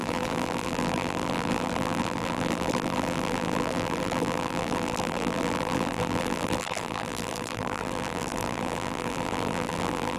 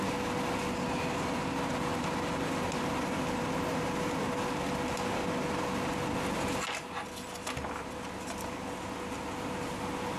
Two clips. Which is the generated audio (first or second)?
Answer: first